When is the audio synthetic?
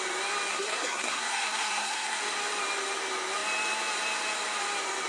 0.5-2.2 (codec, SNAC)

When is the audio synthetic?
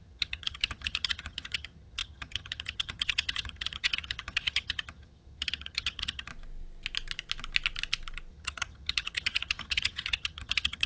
0.0-6.3 (vocoder, HiFi-GAN); 8.3-10.9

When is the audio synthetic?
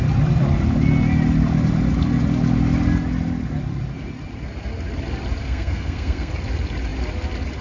5.4-6.3 (codec, SNAC)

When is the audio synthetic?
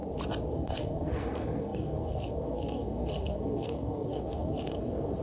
0.5-5.2 (codec, SNAC)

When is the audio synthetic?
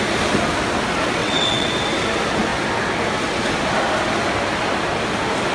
1.2-1.7 (vocoder, WaveNeXt)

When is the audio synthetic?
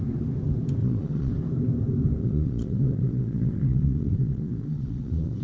0.8-1.3 (vocoder, Vocos); 2.2-5.4